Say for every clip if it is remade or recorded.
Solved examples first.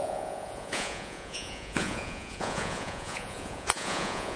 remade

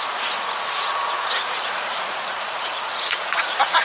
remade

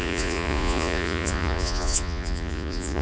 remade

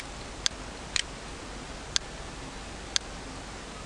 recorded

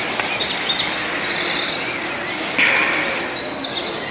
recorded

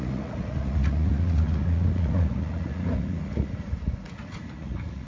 remade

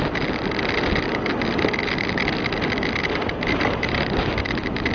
recorded